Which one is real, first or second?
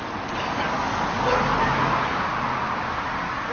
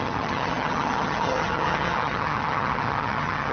first